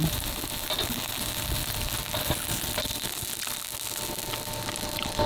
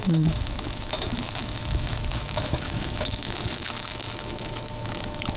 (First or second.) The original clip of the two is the first